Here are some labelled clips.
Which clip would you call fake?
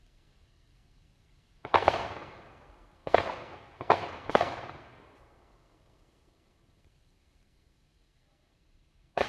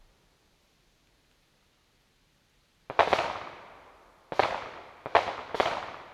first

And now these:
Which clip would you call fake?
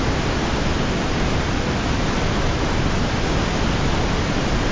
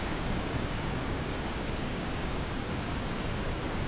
second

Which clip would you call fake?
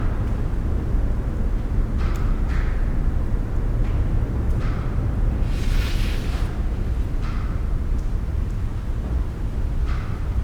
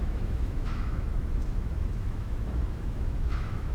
second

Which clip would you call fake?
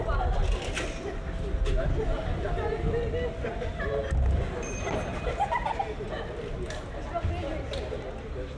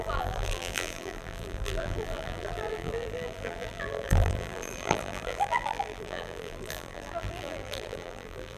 second